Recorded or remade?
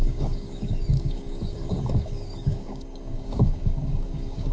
remade